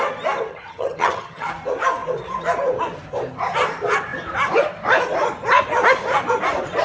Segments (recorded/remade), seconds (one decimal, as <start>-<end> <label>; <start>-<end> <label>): 0.0-0.5 recorded; 0.5-1.5 remade; 1.5-6.8 recorded